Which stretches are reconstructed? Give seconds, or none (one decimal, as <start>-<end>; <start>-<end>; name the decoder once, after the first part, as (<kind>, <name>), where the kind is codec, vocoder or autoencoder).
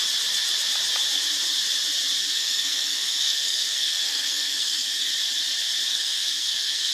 2.2-5.1 (codec, SNAC); 5.9-6.9